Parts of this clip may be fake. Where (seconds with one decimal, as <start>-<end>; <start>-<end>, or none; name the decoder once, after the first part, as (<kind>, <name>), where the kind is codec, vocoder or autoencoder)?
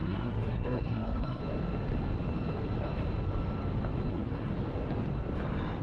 0.0-1.4 (codec, SNAC); 4.1-4.5